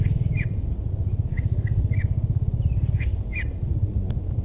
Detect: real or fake real